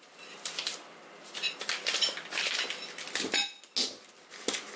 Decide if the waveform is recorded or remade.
recorded